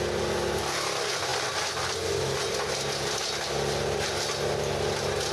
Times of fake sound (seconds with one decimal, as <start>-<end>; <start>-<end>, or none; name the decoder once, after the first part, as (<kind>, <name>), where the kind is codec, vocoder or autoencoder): none